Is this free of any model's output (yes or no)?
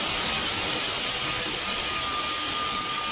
yes